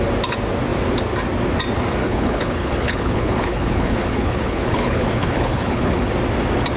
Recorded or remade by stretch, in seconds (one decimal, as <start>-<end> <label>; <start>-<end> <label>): 0.0-2.0 recorded; 2.0-6.1 remade; 6.1-6.8 recorded